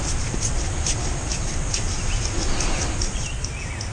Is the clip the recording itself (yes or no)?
yes